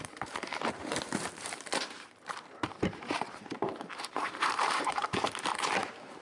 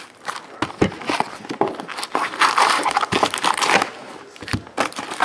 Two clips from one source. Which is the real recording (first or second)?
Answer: second